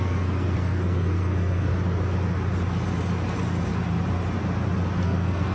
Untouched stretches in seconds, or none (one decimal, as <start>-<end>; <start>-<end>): 1.7-5.0